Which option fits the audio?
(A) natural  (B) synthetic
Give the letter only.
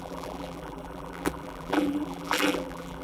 B